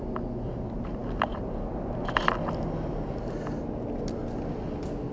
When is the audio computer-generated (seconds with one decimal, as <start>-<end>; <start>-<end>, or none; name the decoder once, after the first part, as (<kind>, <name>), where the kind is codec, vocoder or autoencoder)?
none